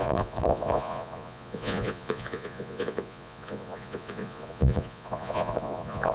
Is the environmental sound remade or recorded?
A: remade